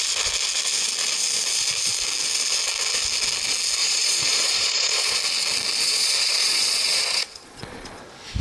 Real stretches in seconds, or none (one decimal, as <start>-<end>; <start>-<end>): 0.0-3.8; 5.2-5.8; 8.0-8.4